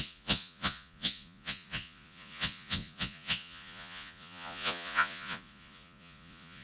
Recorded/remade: remade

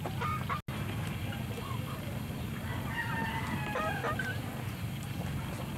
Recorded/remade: recorded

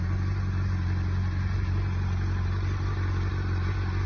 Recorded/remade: recorded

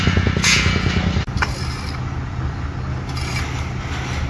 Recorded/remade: recorded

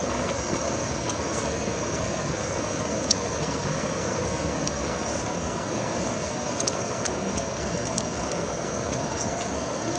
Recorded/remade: remade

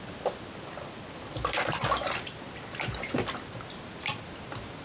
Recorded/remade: recorded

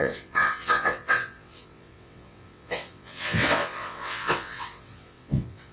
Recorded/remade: remade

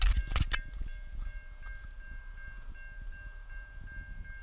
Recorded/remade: recorded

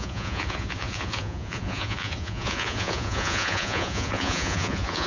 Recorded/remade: remade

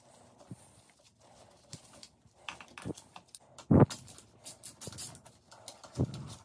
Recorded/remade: recorded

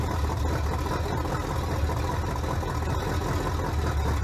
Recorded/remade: recorded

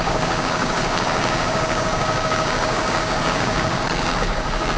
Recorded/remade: remade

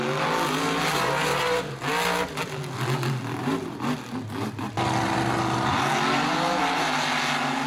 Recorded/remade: recorded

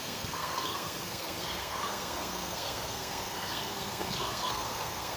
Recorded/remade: remade